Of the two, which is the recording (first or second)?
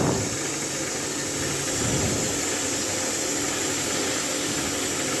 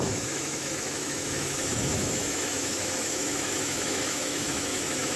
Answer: first